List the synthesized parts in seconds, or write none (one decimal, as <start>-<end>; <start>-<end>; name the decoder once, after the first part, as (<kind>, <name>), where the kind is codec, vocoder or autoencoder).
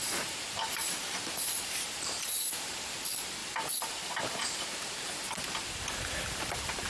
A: 0.0-2.5 (vocoder, BigVGAN v2); 3.4-5.9